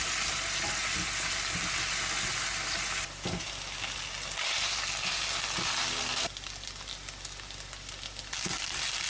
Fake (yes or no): no